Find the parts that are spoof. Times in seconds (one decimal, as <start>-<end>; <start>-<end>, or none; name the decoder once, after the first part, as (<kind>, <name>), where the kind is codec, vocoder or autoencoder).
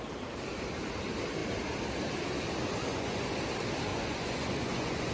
2.9-3.4 (vocoder, Vocos); 3.9-5.1